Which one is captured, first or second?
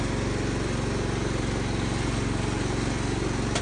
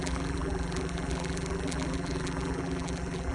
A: first